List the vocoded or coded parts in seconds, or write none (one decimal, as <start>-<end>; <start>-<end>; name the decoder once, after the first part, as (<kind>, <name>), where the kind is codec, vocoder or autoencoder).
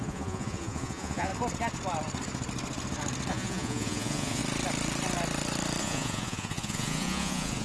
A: 0.0-1.3 (vocoder, Vocos); 3.3-4.4; 5.8-7.6